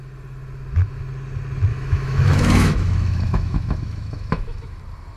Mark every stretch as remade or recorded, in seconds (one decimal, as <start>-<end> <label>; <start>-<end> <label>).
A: 0.0-1.7 recorded; 1.7-4.8 remade; 4.8-5.2 recorded